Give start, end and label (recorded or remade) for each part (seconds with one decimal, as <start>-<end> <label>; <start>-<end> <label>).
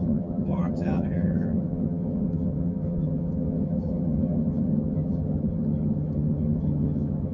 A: 0.0-7.3 remade